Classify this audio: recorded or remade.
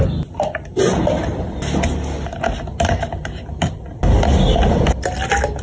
recorded